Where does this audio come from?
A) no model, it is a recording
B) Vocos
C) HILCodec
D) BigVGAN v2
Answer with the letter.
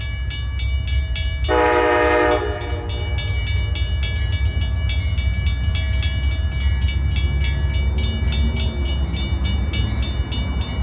A